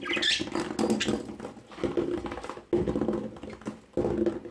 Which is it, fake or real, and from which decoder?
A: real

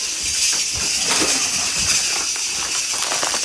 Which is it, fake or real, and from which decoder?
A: real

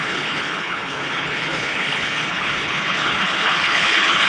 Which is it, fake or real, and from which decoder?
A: fake, codec, HILCodec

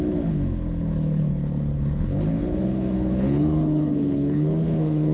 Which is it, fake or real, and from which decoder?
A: fake, codec, HILCodec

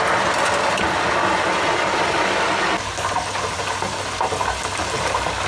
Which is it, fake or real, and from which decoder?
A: real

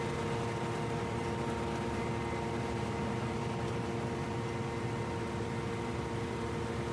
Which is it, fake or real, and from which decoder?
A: real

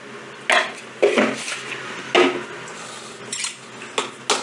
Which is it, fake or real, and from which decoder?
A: real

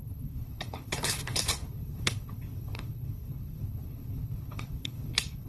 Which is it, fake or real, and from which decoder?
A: fake, codec, HILCodec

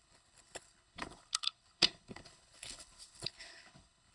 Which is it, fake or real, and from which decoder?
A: fake, codec, HILCodec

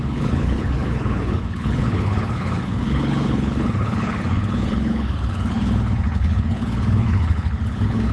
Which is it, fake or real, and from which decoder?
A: fake, codec, HILCodec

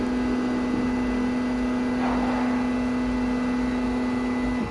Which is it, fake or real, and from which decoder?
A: real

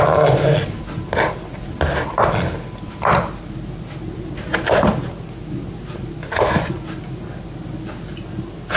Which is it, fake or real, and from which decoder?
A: real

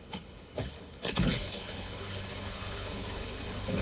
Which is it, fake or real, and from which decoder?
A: fake, codec, HILCodec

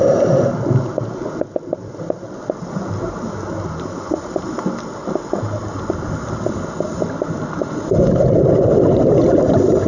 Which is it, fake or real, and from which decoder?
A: real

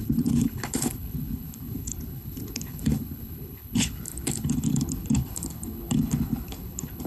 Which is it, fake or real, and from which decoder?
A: fake, codec, HILCodec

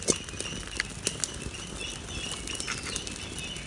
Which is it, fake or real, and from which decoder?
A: real